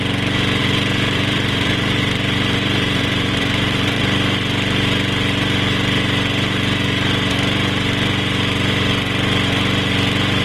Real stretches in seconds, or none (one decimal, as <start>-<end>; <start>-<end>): 0.0-0.6; 4.0-10.4